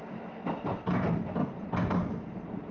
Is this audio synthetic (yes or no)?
no